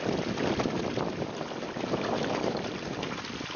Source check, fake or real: real